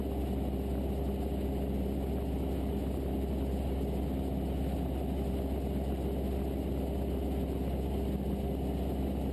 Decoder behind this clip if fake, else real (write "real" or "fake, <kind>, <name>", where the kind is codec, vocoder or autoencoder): real